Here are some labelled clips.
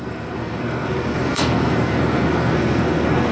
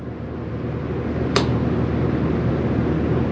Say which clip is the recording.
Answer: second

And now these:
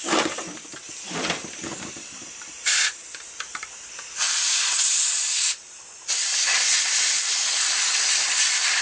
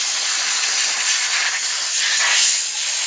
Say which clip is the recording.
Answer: second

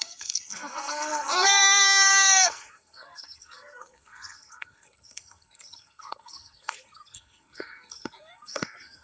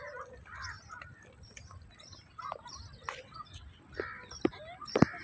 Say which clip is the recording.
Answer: second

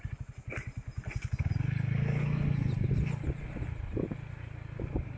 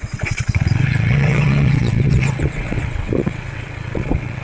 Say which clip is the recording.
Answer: first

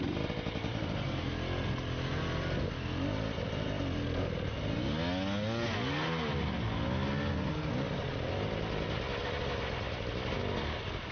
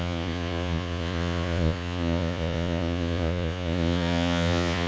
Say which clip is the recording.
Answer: first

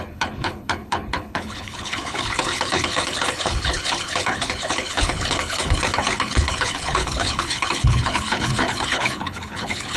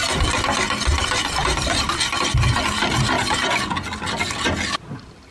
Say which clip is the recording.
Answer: second